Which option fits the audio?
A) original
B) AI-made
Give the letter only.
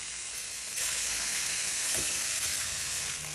B